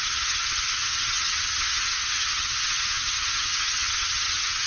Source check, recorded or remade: remade